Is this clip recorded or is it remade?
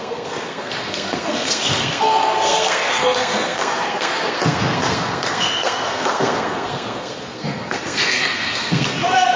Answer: remade